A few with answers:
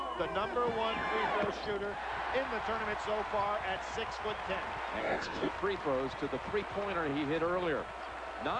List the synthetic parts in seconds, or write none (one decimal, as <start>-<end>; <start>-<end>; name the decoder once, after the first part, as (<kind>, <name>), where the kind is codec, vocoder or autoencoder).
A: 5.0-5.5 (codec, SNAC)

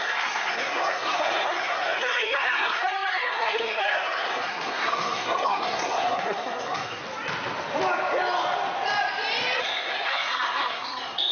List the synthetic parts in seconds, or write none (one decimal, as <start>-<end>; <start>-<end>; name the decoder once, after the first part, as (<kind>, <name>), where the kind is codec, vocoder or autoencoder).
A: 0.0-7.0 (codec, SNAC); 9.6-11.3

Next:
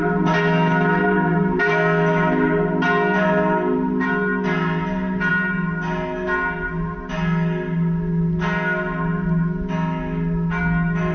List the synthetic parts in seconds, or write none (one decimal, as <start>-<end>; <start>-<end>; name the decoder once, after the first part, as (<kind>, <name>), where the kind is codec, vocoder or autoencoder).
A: none